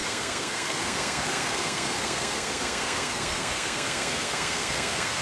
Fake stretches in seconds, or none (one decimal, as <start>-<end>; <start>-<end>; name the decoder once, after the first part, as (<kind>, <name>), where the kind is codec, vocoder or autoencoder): 0.0-5.2 (codec, SNAC)